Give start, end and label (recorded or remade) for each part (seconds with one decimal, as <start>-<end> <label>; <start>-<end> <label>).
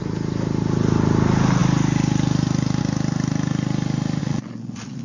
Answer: 0.0-4.2 recorded; 4.2-5.0 remade